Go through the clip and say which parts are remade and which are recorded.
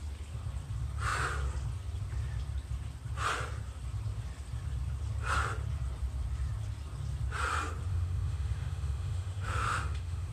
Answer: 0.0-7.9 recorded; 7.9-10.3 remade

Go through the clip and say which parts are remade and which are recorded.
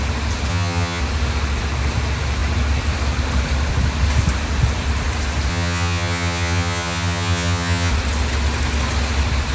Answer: 0.0-0.5 recorded; 0.5-1.0 remade; 1.0-5.5 recorded; 5.5-7.9 remade; 7.9-9.5 recorded